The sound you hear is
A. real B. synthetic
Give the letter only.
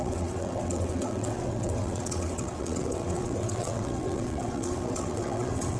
B